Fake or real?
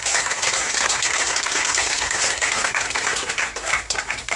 fake